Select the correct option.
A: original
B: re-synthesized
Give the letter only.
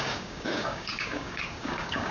B